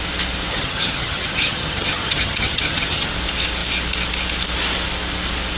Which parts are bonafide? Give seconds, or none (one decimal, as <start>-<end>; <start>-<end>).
0.0-0.5; 3.1-5.6